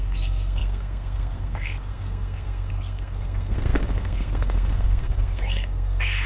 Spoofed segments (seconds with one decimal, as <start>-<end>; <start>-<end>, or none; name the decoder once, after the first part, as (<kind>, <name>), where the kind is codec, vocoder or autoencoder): 0.0-6.3 (codec, SNAC)